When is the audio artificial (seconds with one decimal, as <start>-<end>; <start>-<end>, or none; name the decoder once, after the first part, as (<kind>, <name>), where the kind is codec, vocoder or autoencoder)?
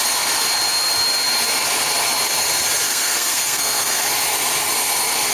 2.9-4.0 (codec, SNAC)